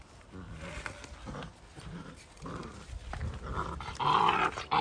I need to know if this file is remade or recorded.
recorded